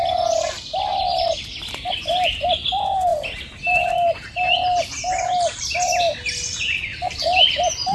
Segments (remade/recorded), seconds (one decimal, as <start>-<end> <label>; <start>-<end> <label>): 0.0-6.9 recorded; 6.9-7.4 remade; 7.4-7.9 recorded